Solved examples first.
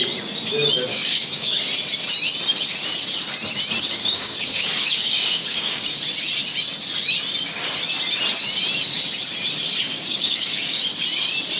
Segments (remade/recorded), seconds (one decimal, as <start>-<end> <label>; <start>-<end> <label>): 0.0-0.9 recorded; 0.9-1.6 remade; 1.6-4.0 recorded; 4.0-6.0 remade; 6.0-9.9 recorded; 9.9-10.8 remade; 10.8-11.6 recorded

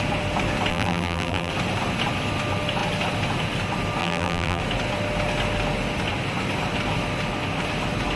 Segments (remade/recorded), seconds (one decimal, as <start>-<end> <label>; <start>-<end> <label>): 0.0-0.7 recorded; 0.7-1.5 remade; 1.5-4.0 recorded; 4.0-4.6 remade; 4.6-8.2 recorded

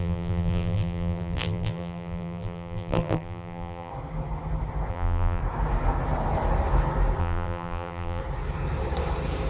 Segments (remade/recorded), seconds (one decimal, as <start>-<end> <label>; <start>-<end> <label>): 0.0-3.9 remade; 3.9-4.9 recorded; 4.9-5.4 remade; 5.4-7.2 recorded; 7.2-8.2 remade; 8.2-9.5 recorded

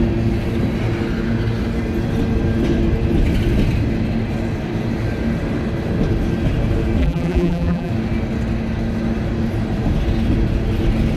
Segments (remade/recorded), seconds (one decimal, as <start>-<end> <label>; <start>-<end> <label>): 0.0-7.0 recorded; 7.0-7.9 remade; 7.9-11.2 recorded

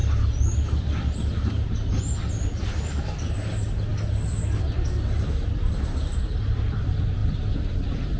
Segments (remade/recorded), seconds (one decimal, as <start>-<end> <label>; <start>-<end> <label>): 0.0-8.2 recorded